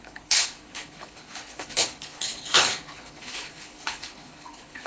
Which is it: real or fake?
fake